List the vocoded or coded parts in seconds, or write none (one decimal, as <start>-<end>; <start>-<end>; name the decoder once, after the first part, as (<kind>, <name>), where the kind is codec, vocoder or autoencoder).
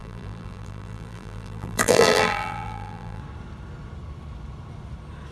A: 0.0-3.2 (vocoder, BigVGAN v2)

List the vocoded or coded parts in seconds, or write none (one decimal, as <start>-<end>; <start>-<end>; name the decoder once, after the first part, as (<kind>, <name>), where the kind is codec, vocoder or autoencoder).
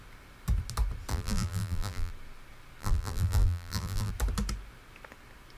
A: 1.1-2.1 (vocoder, BigVGAN v2); 2.8-4.1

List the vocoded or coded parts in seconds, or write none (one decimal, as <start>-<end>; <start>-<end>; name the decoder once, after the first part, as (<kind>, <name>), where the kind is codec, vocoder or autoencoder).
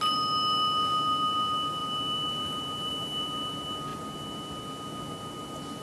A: none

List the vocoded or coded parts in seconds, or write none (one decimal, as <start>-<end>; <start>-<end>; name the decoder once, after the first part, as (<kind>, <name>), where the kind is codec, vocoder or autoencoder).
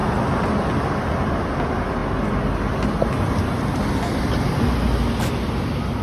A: 0.0-0.6 (vocoder, BigVGAN v2)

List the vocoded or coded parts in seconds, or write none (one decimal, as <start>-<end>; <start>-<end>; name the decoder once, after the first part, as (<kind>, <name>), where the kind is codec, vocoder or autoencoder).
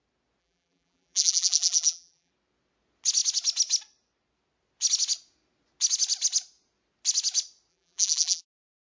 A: 0.4-2.3 (vocoder, BigVGAN v2); 7.7-8.4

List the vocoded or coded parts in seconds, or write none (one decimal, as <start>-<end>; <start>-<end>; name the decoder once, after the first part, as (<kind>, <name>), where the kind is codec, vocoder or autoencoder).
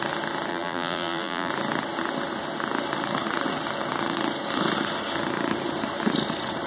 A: 0.5-1.5 (vocoder, BigVGAN v2)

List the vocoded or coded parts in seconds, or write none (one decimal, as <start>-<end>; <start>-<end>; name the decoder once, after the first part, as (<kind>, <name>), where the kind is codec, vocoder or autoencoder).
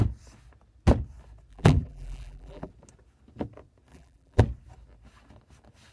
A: 1.5-2.7 (vocoder, BigVGAN v2); 3.9-4.4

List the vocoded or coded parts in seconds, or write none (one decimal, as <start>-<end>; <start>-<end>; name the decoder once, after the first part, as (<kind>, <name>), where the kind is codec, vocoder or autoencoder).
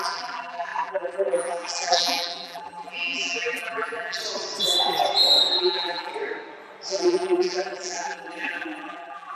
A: 0.0-4.2 (vocoder, BigVGAN v2); 5.6-6.1; 6.9-9.4